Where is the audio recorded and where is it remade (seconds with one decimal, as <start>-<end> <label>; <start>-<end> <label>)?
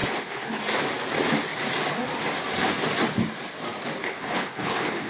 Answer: 0.0-0.6 remade; 0.6-4.0 recorded; 4.0-5.1 remade